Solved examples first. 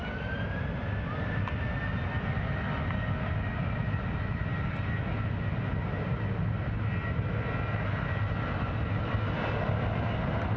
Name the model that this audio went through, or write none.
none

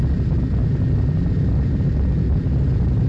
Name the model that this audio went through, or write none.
none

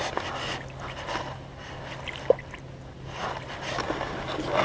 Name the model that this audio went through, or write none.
none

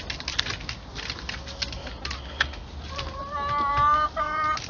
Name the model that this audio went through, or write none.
none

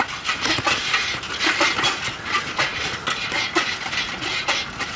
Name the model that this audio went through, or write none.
none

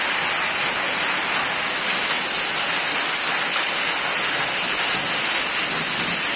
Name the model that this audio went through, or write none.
none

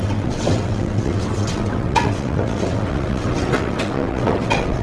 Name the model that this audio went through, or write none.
vocoder, WaveNeXt